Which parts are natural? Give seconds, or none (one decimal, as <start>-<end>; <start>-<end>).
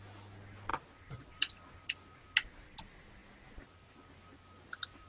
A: 0.0-5.1